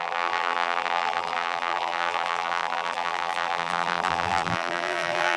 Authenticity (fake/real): fake